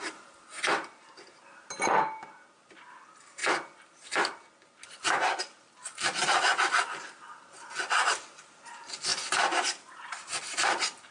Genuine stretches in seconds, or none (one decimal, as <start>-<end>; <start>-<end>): 0.0-11.1